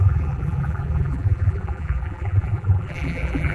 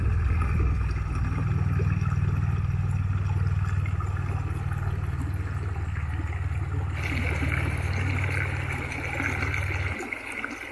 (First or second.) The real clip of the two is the second